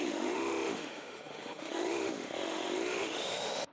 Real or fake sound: fake